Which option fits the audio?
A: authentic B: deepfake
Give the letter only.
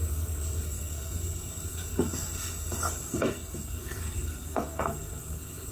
B